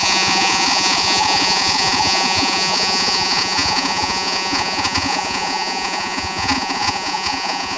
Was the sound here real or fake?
fake